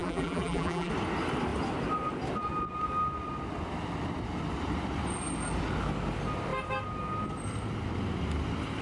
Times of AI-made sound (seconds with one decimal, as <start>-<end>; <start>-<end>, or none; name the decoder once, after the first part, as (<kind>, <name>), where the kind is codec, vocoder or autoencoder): 0.0-0.9 (vocoder, BigVGAN v2)